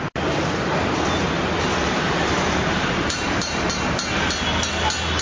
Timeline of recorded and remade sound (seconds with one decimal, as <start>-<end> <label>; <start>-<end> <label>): 0.0-1.7 recorded; 1.7-3.7 remade; 3.7-5.2 recorded